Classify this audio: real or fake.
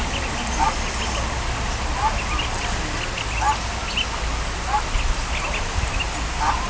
real